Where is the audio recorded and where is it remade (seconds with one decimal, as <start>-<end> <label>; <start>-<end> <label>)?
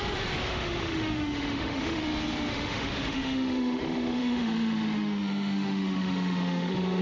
0.0-0.4 recorded; 0.4-2.0 remade; 2.0-2.5 recorded; 2.5-7.0 remade